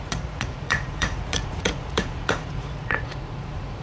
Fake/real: fake